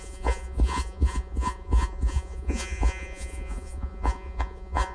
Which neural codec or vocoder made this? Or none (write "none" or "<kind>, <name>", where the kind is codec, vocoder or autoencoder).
vocoder, Vocos